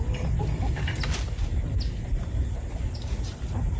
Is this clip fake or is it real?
real